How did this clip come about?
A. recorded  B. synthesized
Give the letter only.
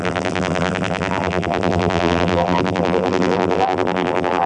B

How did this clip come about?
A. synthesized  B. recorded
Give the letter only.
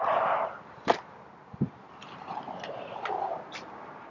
A